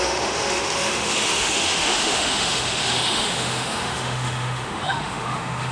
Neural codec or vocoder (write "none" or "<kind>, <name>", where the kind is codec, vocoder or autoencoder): autoencoder, DAC-VAE